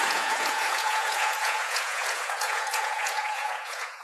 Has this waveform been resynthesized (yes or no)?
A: yes